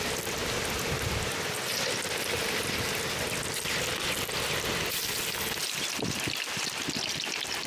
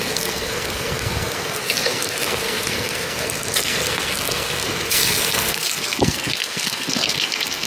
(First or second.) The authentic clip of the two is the first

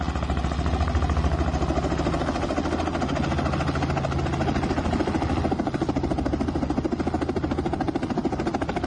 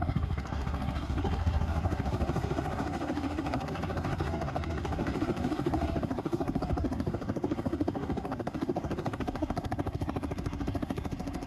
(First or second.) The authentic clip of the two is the first